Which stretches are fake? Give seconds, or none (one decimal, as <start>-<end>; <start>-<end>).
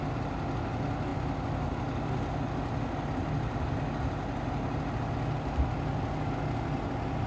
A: none